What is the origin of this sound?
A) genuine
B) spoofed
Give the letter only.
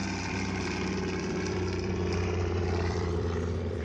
B